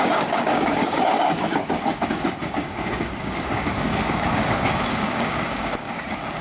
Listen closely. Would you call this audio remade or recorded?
remade